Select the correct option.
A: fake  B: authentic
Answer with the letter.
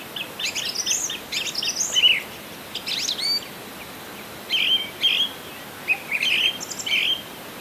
B